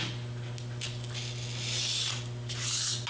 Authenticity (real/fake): real